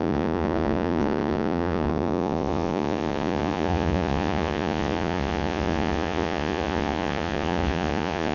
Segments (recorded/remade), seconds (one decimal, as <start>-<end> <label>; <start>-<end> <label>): 0.0-8.3 remade